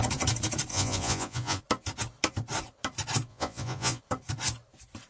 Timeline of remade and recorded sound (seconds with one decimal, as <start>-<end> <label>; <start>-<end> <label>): 0.0-0.7 recorded; 0.7-1.6 remade; 1.6-3.3 recorded; 3.3-4.0 remade; 4.0-5.1 recorded